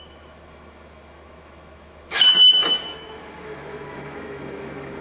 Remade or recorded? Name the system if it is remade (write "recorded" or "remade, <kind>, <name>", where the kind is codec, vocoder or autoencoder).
remade, autoencoder, DAC-VAE